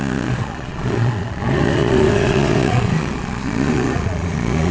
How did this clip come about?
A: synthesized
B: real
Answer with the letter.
A